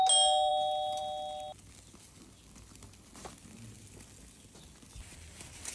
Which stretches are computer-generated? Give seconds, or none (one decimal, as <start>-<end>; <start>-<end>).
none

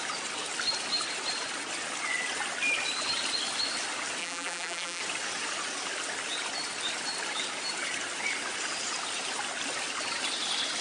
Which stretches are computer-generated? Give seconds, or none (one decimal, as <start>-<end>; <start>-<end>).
4.2-5.0

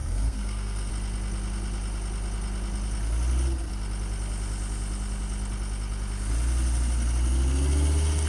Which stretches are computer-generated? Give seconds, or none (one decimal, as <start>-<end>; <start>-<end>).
0.0-0.9

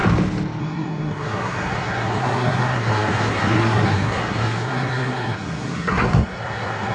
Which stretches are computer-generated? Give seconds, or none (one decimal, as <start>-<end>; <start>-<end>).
0.6-6.9